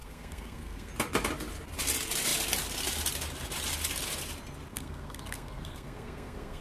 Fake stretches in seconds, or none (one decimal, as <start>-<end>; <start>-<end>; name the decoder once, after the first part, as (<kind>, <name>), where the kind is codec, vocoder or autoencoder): 0.0-0.9 (codec, SNAC); 4.7-6.6